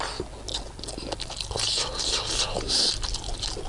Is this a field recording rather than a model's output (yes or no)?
yes